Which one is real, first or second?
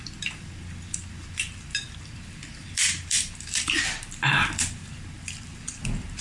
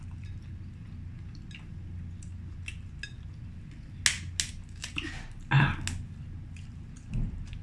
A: second